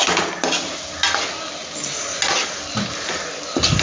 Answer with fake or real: real